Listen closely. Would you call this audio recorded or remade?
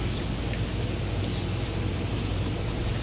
recorded